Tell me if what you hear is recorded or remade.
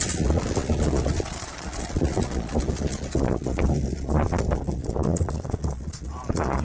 remade